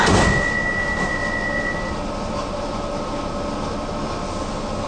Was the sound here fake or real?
real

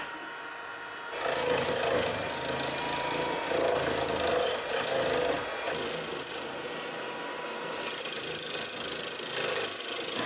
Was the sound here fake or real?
real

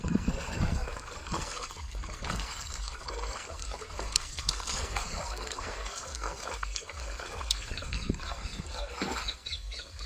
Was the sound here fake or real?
fake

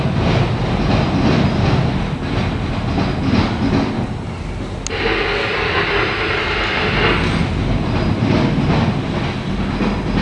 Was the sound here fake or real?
real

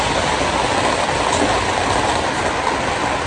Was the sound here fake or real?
real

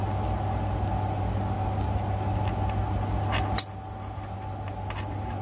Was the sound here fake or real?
real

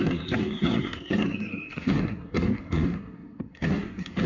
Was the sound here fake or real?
fake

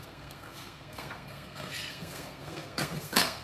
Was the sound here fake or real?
fake